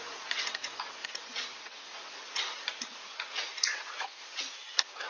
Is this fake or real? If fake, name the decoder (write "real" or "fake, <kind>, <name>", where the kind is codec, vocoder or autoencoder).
fake, vocoder, Vocos